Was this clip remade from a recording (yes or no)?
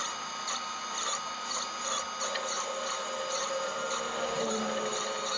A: no